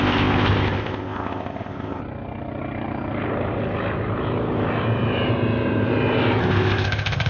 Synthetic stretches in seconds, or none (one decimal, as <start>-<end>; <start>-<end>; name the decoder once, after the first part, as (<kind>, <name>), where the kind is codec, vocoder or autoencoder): 0.0-2.0 (codec, ZipCodec); 6.4-7.3

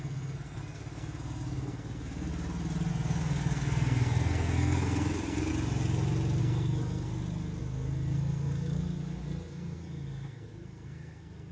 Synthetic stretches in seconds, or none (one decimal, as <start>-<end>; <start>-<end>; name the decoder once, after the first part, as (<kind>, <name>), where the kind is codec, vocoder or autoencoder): 0.0-2.3 (codec, SNAC); 2.9-5.5; 6.4-7.1; 7.6-11.5

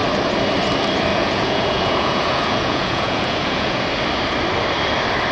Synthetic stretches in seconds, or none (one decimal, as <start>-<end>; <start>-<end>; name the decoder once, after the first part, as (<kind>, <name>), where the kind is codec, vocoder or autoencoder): 1.1-3.8 (vocoder, Vocos)

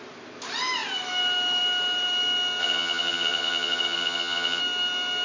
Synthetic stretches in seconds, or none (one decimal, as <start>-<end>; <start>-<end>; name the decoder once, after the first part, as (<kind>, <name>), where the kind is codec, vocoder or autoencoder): 2.6-4.6 (vocoder, HiFi-GAN)

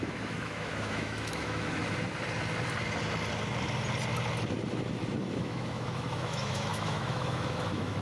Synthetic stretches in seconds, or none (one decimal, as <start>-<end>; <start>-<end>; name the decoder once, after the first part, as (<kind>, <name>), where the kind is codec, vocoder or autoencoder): 0.0-1.8 (autoencoder, DAC-VAE); 5.4-8.0

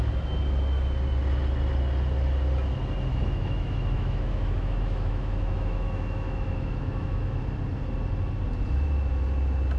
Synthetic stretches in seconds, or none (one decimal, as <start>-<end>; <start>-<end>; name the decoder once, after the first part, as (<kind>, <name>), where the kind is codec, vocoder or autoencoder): 3.1-7.4 (autoencoder, DAC-VAE)

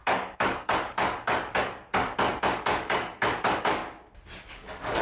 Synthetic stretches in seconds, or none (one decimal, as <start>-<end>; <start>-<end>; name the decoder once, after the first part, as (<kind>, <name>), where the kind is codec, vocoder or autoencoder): 0.0-3.8 (codec, DAC); 4.5-5.0

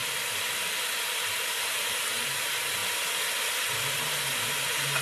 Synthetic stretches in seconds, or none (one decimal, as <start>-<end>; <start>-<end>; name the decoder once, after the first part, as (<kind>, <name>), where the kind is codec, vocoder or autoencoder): 0.0-0.8 (vocoder, BigVGAN v2)